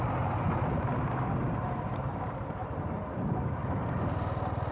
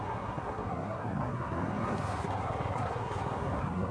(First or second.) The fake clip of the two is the second